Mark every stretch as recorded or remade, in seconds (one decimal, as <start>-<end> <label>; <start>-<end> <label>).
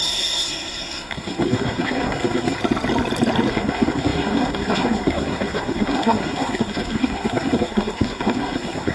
0.0-2.6 remade; 2.6-3.5 recorded; 3.5-8.9 remade